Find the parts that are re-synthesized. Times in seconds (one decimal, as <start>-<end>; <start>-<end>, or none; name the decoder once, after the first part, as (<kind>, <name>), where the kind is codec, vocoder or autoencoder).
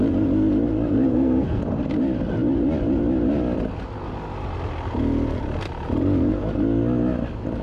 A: 1.1-1.6 (codec, SNAC)